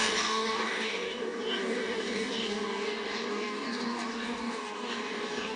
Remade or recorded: remade